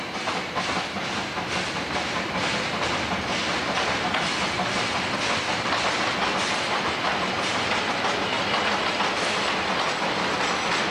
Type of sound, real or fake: real